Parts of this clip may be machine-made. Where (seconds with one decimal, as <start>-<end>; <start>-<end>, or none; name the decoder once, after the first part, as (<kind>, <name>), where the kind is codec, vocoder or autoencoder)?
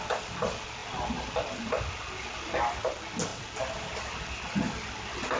none